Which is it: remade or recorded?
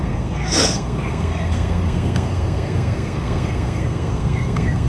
remade